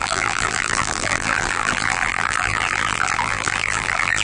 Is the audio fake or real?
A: fake